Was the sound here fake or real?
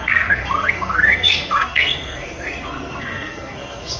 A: fake